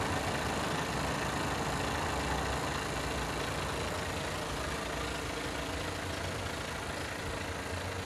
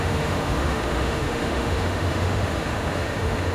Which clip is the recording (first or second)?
first